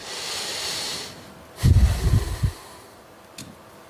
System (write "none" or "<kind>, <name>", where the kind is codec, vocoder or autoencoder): vocoder, BigVGAN v2